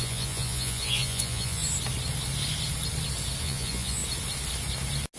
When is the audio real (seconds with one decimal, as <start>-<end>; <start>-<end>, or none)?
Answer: 1.6-3.4; 4.0-5.2